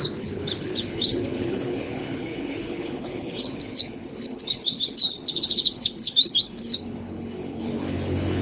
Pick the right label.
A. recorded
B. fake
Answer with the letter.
B